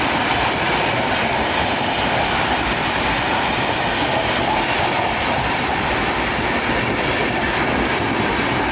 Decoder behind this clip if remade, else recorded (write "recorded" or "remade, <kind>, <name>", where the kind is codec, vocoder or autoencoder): remade, vocoder, BigVGAN v2